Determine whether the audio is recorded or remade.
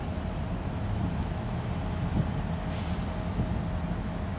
recorded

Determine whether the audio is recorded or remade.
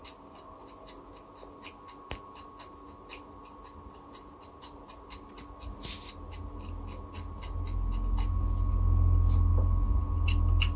recorded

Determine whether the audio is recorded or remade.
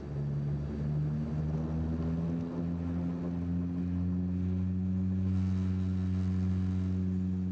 recorded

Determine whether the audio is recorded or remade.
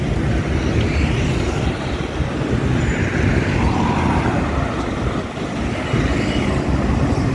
recorded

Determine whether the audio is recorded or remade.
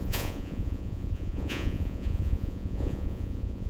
remade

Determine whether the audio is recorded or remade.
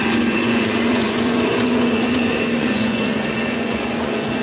remade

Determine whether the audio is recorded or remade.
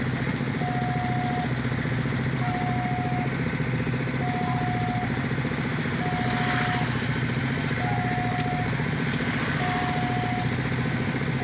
recorded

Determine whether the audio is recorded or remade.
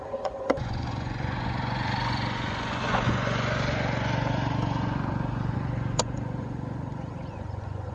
remade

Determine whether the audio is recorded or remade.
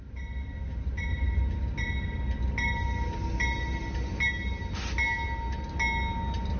recorded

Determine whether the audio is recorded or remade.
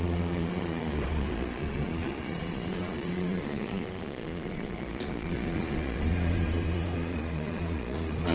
remade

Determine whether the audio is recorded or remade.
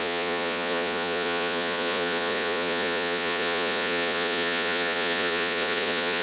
remade